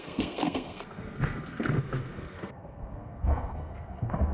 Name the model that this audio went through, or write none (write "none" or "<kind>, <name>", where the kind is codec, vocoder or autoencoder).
codec, SNAC